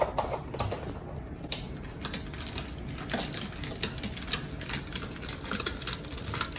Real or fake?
real